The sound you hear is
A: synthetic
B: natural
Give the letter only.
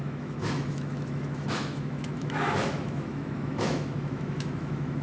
A